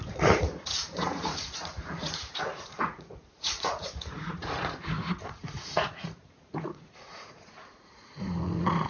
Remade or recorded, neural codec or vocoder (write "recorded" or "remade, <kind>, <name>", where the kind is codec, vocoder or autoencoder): remade, vocoder, Vocos